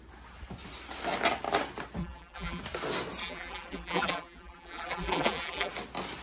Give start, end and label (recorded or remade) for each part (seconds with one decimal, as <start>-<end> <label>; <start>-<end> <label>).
0.0-2.0 recorded; 2.0-2.6 remade; 2.6-3.2 recorded; 3.2-5.7 remade; 5.7-6.2 recorded